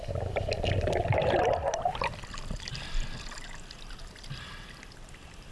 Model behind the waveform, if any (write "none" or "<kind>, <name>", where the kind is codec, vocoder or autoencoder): none